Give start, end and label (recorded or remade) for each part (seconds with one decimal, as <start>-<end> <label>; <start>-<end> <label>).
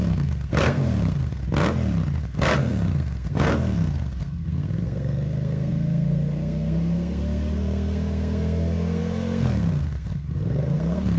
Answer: 0.0-1.4 remade; 1.4-2.2 recorded; 2.2-11.2 remade